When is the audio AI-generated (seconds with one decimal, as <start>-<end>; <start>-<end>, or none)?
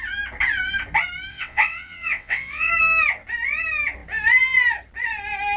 1.3-2.7